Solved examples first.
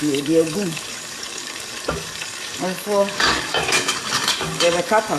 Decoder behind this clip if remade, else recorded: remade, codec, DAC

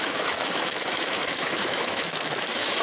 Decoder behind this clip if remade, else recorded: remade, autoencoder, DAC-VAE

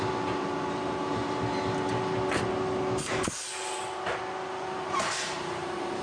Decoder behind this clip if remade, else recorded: recorded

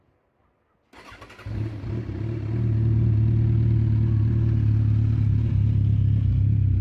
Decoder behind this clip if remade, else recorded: recorded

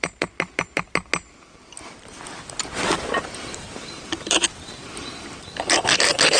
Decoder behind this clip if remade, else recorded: recorded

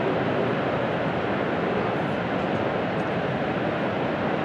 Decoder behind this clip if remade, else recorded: recorded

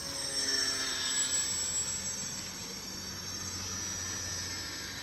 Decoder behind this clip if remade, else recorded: recorded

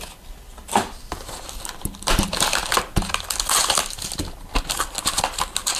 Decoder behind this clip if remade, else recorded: recorded